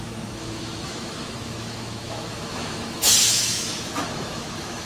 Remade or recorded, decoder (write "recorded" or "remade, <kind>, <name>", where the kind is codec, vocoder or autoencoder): remade, autoencoder, DAC-VAE